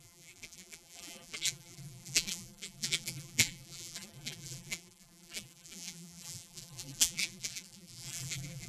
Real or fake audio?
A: fake